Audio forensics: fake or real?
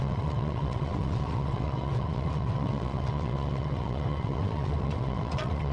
fake